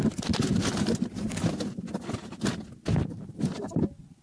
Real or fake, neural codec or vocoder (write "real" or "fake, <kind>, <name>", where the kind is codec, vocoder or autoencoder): real